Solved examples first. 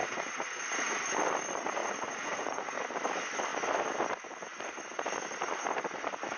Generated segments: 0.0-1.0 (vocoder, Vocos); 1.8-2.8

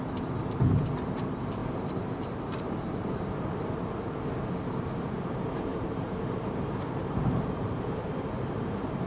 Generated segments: 1.6-3.5 (vocoder, BigVGAN v2); 5.7-8.0

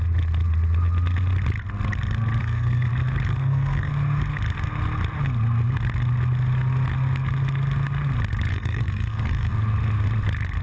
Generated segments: 2.4-2.9 (codec, SNAC); 3.3-3.9; 8.5-9.5

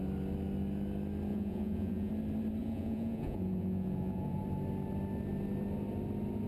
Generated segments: 1.3-2.1 (vocoder, Vocos); 2.6-4.4

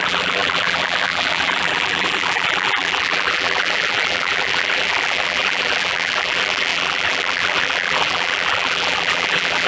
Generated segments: 0.0-9.7 (vocoder, BigVGAN v2)

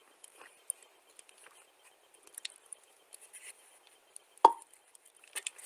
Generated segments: none